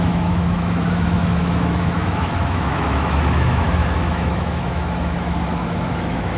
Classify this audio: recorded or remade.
remade